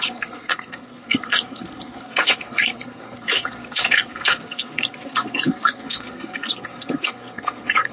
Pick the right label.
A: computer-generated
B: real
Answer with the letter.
A